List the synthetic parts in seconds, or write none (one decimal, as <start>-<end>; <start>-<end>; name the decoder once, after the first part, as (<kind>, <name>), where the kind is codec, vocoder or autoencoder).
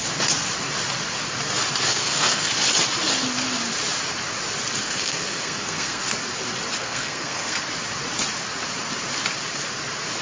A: 1.9-2.5 (codec, SNAC); 4.8-6.0; 6.8-7.6